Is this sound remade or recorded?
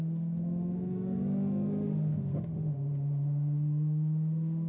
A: remade